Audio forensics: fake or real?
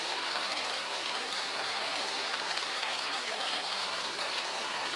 fake